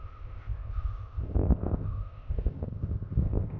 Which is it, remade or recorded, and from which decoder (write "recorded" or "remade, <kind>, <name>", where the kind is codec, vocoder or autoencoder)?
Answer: remade, codec, ZipCodec